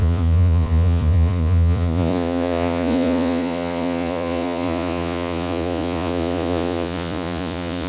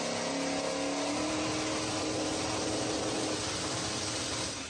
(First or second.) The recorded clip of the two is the second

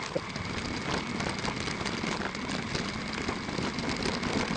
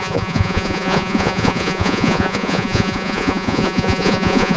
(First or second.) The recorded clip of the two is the first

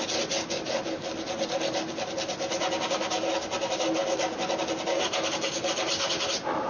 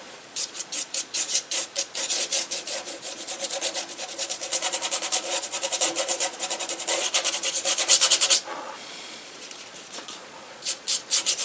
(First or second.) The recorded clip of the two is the first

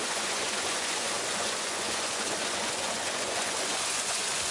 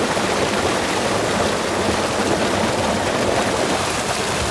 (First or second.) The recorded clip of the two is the second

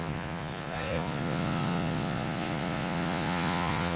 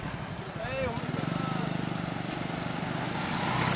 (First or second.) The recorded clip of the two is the second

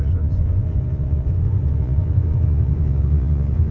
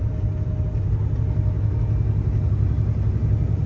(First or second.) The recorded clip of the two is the second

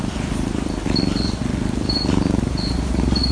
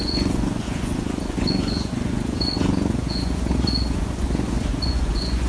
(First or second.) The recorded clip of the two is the first